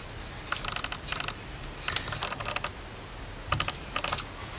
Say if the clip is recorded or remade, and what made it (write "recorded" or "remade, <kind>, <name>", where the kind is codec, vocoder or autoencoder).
recorded